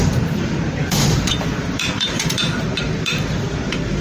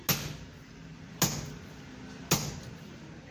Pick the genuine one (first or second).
second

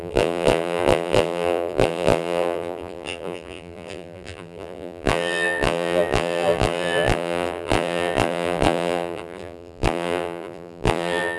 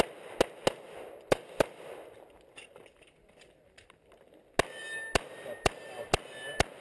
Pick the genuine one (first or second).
second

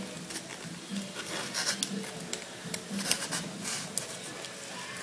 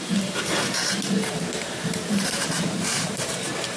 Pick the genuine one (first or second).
first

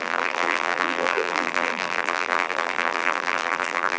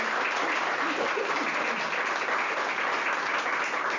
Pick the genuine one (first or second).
second